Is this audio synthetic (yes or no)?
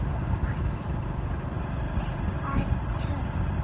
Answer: no